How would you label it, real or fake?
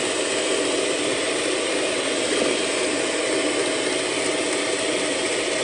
real